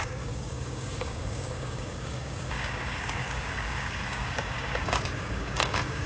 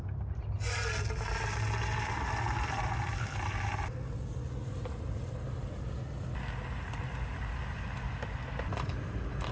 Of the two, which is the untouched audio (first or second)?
second